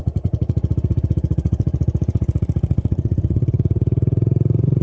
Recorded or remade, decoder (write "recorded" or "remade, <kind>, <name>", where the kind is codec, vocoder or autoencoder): remade, vocoder, Vocos